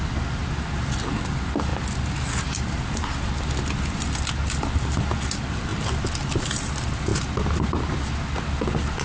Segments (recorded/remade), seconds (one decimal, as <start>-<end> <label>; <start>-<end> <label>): 0.0-0.4 remade; 0.4-1.0 recorded; 1.0-1.7 remade; 1.7-4.6 recorded; 4.6-5.7 remade; 5.7-6.5 recorded; 6.5-9.0 remade